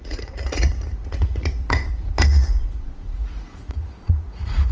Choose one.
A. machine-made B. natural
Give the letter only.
A